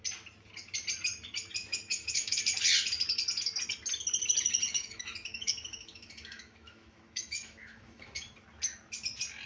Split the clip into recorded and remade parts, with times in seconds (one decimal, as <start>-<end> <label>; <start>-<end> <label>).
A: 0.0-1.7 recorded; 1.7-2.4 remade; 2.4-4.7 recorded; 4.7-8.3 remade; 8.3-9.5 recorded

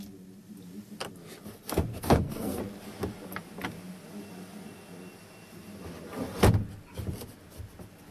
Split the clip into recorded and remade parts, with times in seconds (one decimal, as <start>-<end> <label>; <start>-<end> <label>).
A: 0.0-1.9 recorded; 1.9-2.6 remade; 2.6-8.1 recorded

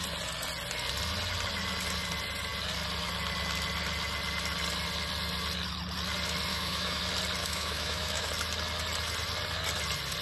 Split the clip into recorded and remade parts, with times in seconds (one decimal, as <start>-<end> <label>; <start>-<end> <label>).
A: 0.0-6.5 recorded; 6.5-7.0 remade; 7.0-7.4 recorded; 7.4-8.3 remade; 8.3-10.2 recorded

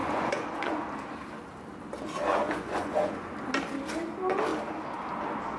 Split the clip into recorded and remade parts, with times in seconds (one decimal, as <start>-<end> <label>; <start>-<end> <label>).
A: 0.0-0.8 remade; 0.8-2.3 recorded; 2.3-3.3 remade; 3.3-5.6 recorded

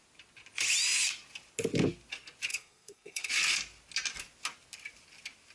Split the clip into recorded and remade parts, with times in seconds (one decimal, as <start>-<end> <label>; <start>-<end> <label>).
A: 0.0-2.5 recorded; 2.5-3.3 remade; 3.3-5.5 recorded